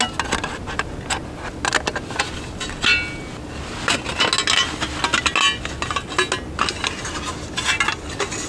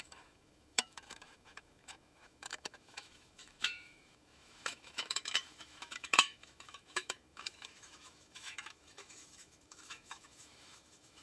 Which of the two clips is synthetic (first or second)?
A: second